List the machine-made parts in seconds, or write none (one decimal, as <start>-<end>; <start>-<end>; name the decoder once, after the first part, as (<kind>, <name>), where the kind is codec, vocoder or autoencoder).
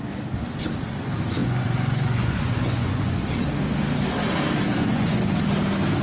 1.4-3.2 (vocoder, Vocos); 4.8-5.3